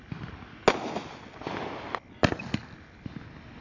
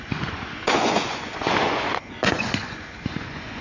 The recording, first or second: first